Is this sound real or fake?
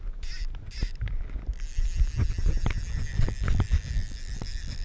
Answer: real